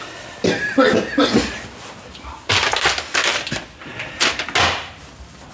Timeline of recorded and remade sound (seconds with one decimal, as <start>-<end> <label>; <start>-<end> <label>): 0.0-5.5 recorded